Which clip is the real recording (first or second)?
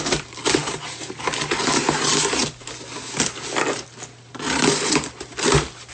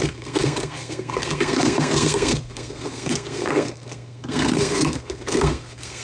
first